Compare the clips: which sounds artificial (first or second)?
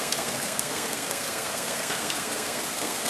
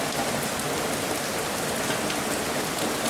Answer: first